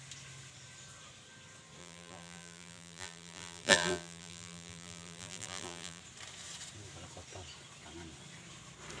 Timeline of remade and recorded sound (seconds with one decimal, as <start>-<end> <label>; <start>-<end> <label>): 0.0-1.8 recorded; 1.8-6.0 remade; 6.0-9.0 recorded